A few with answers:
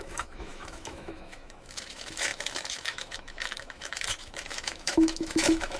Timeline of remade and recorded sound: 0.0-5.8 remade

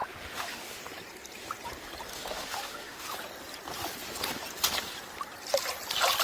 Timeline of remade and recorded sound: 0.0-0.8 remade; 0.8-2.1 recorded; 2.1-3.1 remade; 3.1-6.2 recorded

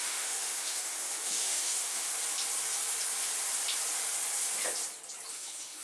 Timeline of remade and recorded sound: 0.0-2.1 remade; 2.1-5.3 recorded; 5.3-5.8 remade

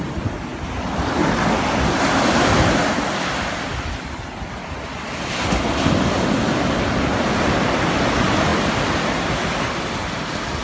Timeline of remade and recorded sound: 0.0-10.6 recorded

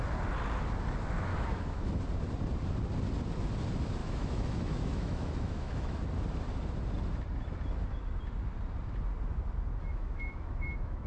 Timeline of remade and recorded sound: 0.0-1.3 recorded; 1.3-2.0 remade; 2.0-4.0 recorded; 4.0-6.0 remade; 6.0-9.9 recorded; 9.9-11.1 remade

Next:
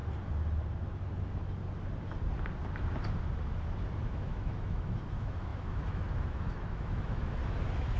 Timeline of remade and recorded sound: 0.0-4.1 recorded; 4.1-7.4 remade; 7.4-8.0 recorded

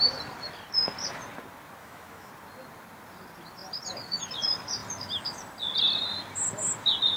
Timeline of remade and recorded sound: 0.0-1.8 recorded; 1.8-2.3 remade; 2.3-7.2 recorded